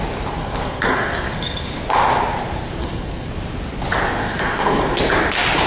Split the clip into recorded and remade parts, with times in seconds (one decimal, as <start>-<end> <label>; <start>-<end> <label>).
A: 0.0-0.4 recorded; 0.4-1.8 remade; 1.8-2.8 recorded; 2.8-3.3 remade; 3.3-4.2 recorded; 4.2-5.0 remade; 5.0-5.7 recorded